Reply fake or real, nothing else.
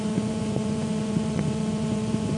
fake